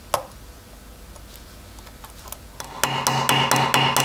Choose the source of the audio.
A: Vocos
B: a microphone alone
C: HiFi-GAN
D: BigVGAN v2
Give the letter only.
B